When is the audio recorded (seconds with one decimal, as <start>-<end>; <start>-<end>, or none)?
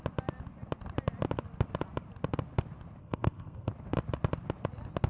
0.0-3.0; 3.7-5.1